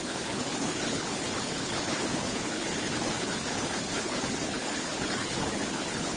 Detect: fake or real fake